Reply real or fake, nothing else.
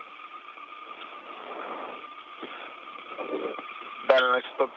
real